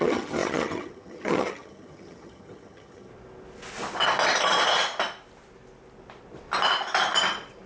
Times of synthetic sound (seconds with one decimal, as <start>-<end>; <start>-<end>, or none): 0.0-3.1